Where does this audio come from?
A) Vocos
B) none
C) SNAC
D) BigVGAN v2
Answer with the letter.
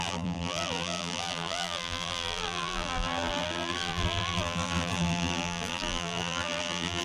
D